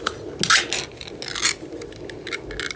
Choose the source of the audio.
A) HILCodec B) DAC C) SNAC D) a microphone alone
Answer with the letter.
D